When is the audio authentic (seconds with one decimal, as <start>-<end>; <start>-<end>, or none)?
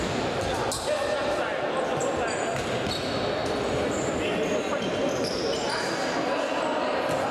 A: 0.0-7.3